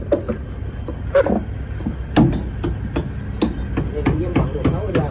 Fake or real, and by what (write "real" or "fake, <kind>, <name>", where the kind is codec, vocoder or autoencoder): real